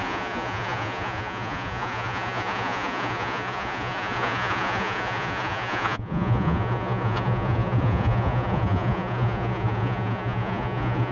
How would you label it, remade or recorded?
remade